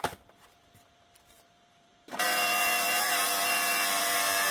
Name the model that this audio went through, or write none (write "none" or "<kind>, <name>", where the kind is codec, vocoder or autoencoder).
vocoder, BigVGAN v2